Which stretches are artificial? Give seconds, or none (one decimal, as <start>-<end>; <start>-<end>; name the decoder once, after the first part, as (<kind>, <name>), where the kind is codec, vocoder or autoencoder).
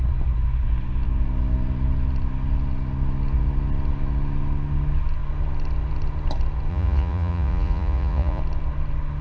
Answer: 6.7-8.4 (vocoder, Vocos)